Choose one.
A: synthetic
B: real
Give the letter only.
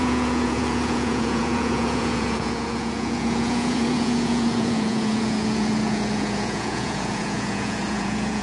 A